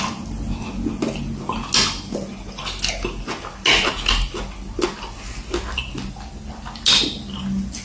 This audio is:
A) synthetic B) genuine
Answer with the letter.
B